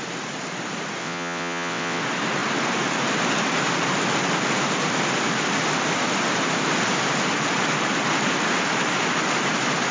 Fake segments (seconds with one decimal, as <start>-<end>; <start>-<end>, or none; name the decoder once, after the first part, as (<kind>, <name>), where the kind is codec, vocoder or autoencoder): 1.0-2.0 (vocoder, WaveNeXt)